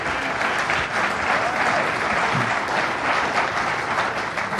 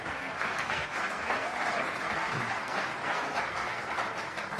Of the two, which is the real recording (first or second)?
first